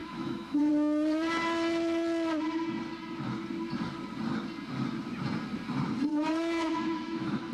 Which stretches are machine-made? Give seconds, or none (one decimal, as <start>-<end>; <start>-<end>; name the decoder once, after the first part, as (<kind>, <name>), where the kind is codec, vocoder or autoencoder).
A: 0.0-0.7 (autoencoder, DAC-VAE); 6.1-7.5